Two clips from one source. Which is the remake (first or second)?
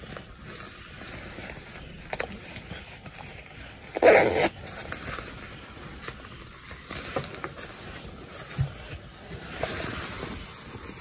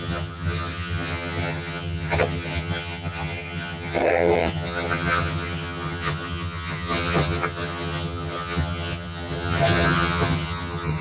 second